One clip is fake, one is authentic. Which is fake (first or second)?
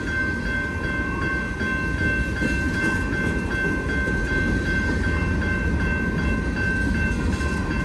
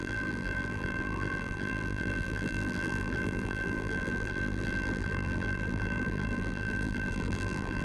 second